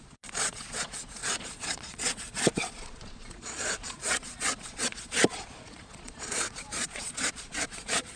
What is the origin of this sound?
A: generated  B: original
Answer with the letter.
A